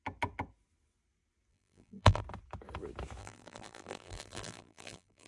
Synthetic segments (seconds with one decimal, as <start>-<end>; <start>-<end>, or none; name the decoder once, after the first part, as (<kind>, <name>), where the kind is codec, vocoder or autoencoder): 1.5-2.2 (vocoder, BigVGAN v2); 3.2-5.3